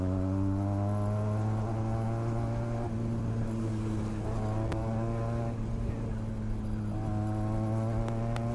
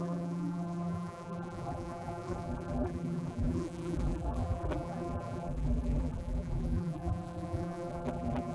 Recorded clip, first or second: first